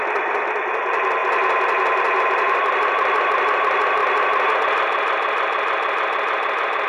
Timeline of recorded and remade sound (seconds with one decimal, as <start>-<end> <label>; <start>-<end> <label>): 0.0-1.2 remade; 1.2-2.2 recorded; 2.2-4.0 remade; 4.0-4.6 recorded; 4.6-6.9 remade